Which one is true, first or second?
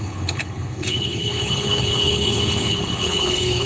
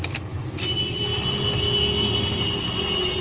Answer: second